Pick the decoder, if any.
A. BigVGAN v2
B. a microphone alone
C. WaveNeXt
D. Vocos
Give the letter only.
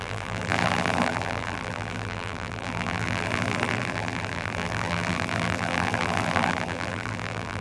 A